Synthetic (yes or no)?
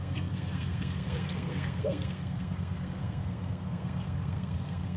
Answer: yes